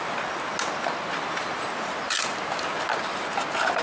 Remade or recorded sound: recorded